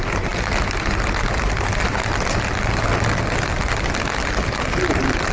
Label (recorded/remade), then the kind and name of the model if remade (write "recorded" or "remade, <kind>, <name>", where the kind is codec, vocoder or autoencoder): recorded